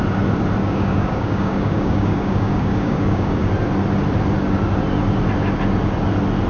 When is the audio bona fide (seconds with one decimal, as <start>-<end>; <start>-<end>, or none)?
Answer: 0.0-0.6; 3.5-6.5